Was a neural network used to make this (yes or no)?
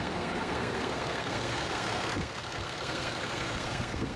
yes